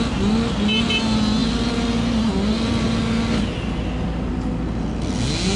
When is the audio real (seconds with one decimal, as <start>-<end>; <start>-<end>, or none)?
0.0-5.6